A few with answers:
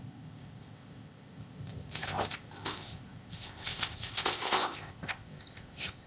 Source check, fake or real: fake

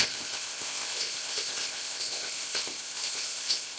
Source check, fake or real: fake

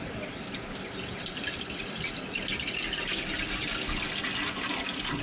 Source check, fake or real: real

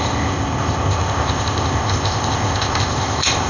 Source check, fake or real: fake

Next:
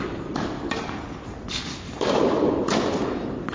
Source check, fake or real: real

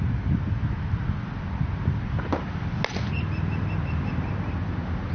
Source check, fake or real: real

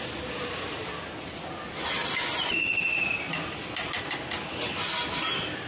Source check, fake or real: real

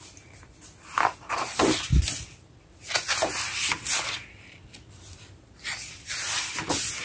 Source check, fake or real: real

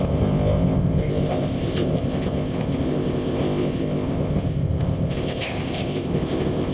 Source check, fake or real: fake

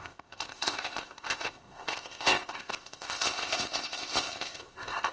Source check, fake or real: fake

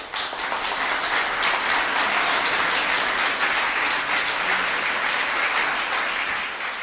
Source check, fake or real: real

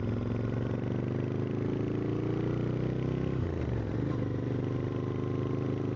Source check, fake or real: real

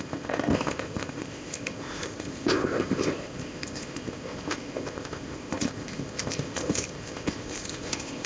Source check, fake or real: fake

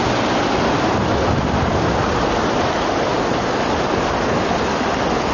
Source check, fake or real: real